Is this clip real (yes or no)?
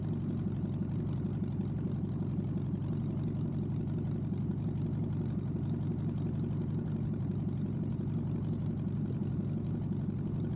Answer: yes